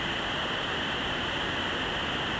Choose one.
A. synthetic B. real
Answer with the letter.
B